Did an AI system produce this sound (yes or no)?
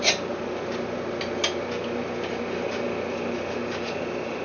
no